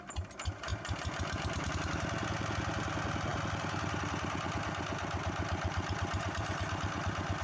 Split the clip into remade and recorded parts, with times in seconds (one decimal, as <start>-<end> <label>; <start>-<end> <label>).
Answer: 0.0-7.4 recorded